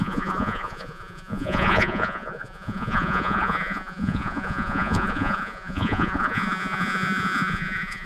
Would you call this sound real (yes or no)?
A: no